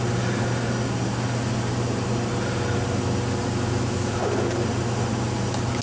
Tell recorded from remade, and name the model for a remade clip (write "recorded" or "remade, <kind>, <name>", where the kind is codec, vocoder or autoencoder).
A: recorded